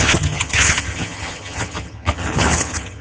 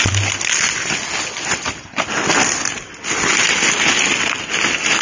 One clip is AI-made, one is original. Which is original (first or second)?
second